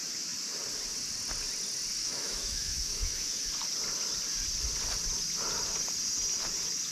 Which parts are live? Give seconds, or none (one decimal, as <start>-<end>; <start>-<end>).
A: 0.0-2.0; 3.5-6.9